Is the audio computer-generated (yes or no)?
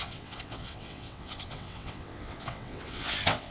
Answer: yes